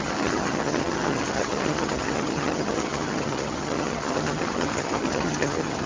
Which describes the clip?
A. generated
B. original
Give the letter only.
A